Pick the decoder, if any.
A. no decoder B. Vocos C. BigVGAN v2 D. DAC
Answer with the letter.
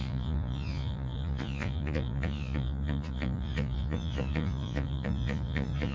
B